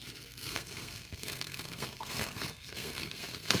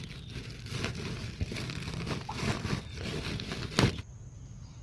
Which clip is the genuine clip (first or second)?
second